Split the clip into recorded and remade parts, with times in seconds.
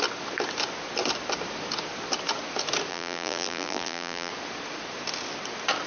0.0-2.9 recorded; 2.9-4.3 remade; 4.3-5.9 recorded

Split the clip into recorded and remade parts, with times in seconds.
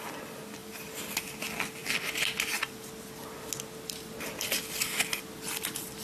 0.0-0.6 recorded; 0.6-1.2 remade; 1.2-6.0 recorded